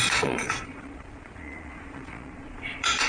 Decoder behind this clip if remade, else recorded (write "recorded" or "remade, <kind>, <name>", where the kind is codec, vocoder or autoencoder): remade, vocoder, Vocos